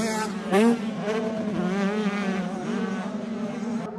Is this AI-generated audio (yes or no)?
no